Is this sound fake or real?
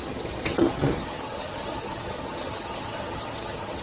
fake